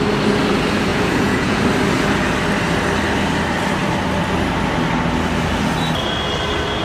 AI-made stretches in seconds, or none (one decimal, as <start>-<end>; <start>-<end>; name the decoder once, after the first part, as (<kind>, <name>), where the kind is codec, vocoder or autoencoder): 0.9-1.6 (vocoder, Vocos)